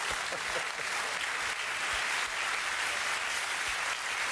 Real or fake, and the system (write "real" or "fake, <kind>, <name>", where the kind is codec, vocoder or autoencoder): real